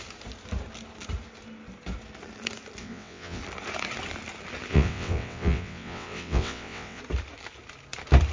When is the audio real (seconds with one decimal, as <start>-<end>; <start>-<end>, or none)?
0.0-2.8; 3.4-4.7; 7.0-8.3